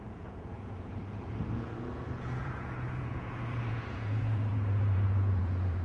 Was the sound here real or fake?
fake